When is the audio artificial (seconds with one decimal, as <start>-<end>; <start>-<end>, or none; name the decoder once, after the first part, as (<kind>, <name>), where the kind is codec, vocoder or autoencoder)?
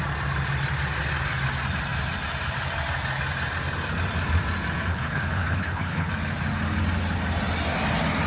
4.9-6.1 (codec, HILCodec)